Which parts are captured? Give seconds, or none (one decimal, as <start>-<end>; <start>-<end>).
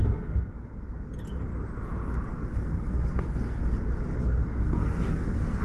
0.8-2.5; 3.6-4.2